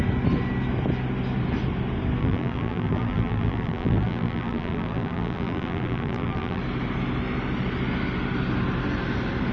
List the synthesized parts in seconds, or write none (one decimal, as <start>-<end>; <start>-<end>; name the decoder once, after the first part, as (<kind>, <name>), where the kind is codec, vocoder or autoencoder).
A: 2.2-6.6 (vocoder, BigVGAN v2)